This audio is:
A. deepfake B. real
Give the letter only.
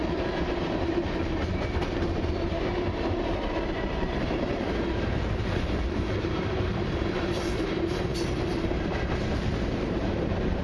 A